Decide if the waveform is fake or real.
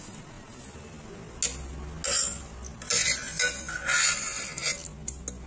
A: real